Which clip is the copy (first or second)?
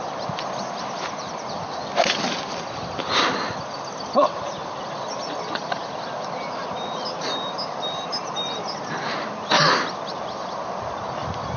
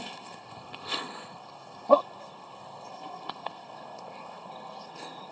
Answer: second